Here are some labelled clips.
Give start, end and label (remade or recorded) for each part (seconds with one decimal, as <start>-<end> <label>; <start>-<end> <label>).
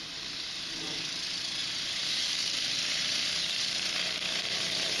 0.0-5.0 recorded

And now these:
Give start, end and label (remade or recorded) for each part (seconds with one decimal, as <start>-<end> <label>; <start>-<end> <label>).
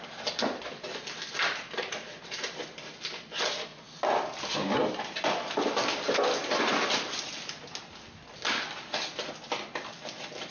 0.0-10.5 recorded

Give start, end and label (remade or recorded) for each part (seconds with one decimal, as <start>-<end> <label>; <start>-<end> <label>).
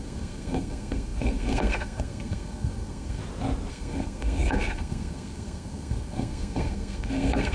0.0-3.2 remade; 3.2-3.7 recorded; 3.7-7.5 remade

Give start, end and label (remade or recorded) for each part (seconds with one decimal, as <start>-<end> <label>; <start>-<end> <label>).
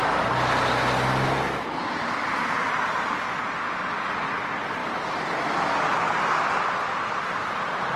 0.0-8.0 recorded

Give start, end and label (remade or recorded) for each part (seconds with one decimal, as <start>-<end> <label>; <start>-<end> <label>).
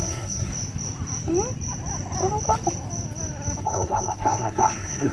0.0-0.5 remade; 0.5-3.6 recorded; 3.6-5.1 remade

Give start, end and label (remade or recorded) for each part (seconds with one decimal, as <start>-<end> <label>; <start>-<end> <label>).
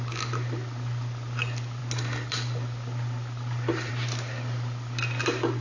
0.0-5.6 recorded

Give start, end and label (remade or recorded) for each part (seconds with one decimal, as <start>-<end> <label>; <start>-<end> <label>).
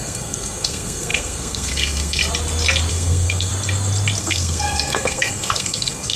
0.0-2.2 remade; 2.2-2.9 recorded; 2.9-3.5 remade; 3.5-4.2 recorded; 4.2-6.2 remade